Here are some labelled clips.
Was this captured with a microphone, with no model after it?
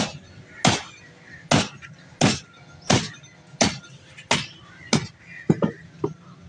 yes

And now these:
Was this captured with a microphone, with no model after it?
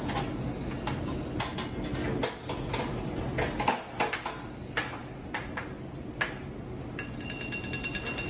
yes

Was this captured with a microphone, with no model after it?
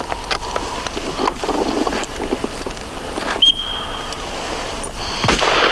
yes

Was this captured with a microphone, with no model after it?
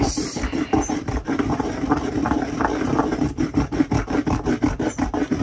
no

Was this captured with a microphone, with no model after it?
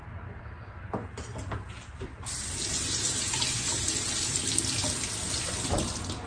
yes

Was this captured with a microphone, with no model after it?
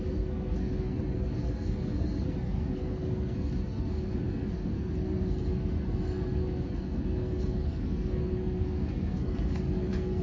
no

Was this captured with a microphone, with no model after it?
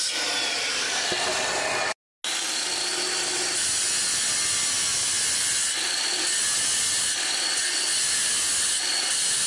yes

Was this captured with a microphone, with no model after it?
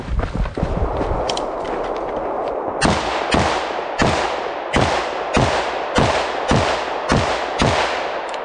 yes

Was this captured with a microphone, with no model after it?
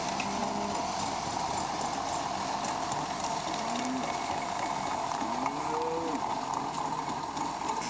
yes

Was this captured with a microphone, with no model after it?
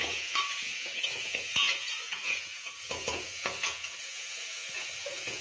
no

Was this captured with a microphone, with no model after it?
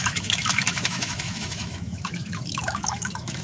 no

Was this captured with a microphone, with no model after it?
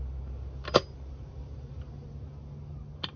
yes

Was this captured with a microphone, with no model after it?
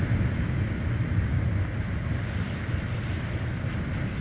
yes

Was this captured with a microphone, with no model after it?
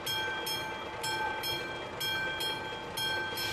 yes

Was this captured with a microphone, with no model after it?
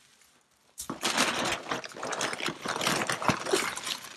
yes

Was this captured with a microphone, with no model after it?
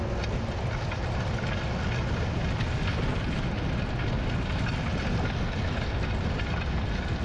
yes